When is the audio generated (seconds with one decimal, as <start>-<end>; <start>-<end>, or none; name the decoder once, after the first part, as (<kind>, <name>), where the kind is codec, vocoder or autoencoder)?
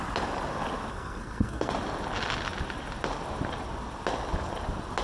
0.9-1.7 (codec, SNAC)